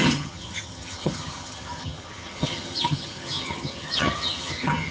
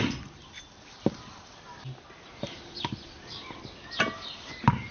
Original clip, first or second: second